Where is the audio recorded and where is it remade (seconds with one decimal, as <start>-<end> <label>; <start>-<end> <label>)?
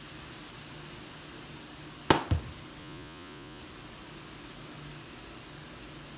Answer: 0.0-2.8 recorded; 2.8-3.6 remade; 3.6-6.2 recorded